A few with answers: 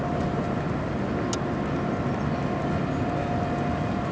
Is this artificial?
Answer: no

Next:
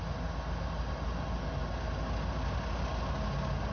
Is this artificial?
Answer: no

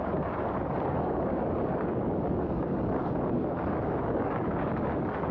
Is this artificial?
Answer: yes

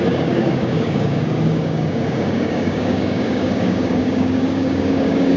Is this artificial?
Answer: yes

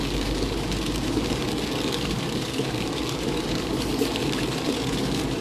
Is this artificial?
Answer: yes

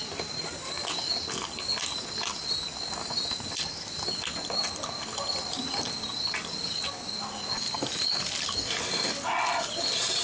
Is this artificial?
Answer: no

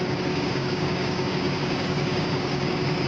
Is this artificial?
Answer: yes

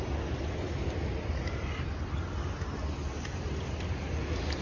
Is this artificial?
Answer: no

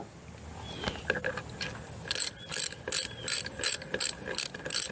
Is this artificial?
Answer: no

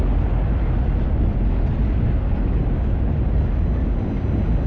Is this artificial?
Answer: no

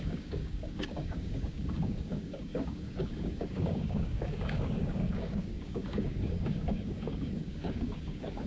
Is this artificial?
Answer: yes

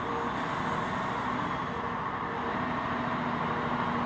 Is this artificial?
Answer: no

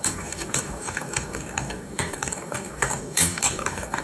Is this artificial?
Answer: yes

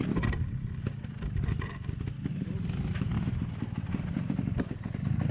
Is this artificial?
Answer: no